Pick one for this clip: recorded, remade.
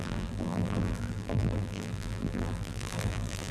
remade